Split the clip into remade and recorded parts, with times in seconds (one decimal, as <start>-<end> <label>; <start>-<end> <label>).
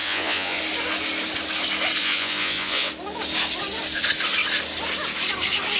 0.0-0.6 remade; 0.6-2.0 recorded; 2.0-2.9 remade; 2.9-5.8 recorded